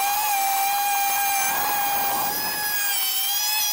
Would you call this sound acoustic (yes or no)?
yes